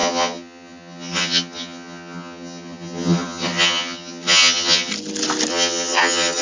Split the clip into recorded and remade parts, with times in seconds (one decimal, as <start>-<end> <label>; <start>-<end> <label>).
0.0-4.9 remade; 4.9-5.5 recorded; 5.5-6.4 remade